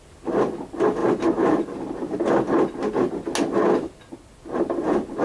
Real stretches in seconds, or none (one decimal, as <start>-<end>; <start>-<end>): 0.0-5.2